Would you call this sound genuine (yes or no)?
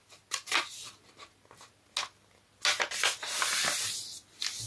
yes